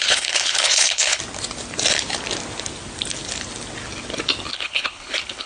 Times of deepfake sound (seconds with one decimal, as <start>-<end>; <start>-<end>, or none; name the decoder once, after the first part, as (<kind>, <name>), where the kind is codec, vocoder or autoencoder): 0.0-1.2 (codec, HILCodec); 4.5-5.5